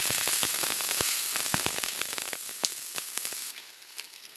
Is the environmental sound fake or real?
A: fake